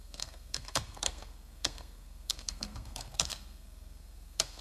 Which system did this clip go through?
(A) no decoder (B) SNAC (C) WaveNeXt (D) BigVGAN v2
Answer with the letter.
B